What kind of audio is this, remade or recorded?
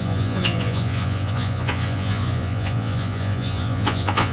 remade